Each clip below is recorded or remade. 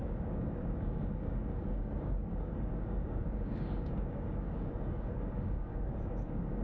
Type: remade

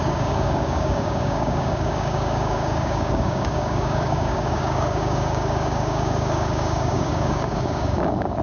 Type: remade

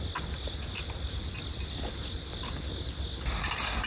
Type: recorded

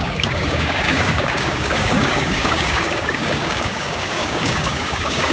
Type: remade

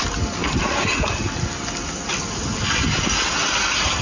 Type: recorded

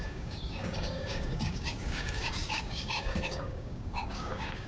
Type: remade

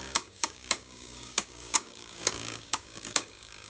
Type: remade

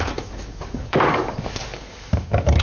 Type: remade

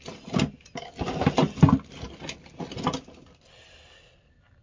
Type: recorded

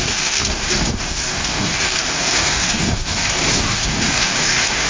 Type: remade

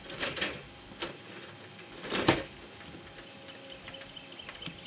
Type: recorded